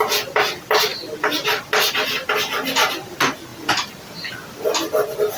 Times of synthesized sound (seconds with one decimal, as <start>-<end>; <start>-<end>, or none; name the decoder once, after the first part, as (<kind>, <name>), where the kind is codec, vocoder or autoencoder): none